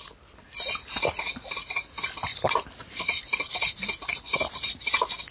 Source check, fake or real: real